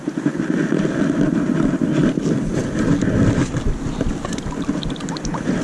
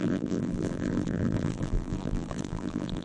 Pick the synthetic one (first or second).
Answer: second